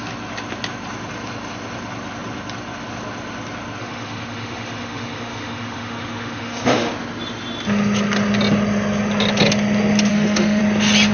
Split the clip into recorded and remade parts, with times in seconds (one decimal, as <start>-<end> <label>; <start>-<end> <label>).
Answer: 0.0-3.8 recorded; 3.8-6.9 remade; 6.9-10.1 recorded; 10.1-10.6 remade; 10.6-11.1 recorded